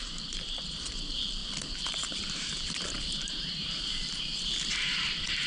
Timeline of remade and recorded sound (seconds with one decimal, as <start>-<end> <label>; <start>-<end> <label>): 0.0-5.5 remade